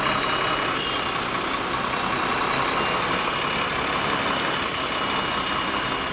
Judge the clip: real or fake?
real